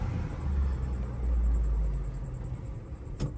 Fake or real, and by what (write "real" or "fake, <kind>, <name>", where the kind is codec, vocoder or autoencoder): real